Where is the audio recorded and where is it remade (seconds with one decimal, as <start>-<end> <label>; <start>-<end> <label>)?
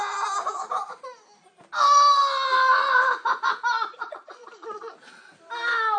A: 0.0-3.9 recorded; 3.9-4.9 remade; 4.9-6.0 recorded